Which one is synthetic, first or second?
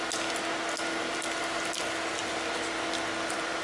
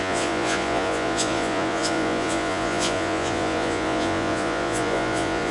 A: second